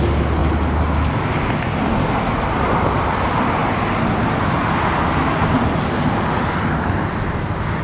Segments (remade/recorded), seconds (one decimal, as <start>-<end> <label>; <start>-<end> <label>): 0.0-7.8 recorded